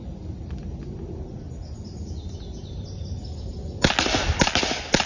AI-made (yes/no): no